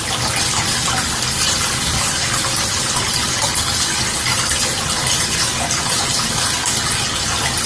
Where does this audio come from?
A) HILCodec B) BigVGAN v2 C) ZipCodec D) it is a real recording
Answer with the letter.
D